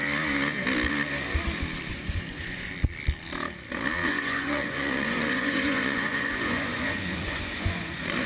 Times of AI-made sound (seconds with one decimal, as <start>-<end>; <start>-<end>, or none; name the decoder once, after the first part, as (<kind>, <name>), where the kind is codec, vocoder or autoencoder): 1.9-2.7 (vocoder, Vocos); 4.0-8.3